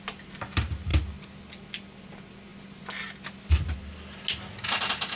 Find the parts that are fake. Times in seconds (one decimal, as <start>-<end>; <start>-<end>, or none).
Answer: 0.0-0.9; 1.5-2.5